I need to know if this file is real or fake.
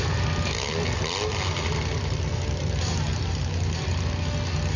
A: real